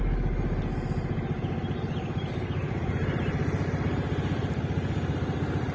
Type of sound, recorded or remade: recorded